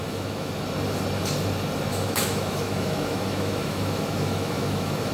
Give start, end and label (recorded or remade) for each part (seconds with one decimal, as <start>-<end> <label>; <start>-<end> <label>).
0.0-0.5 remade; 0.5-1.9 recorded; 1.9-5.1 remade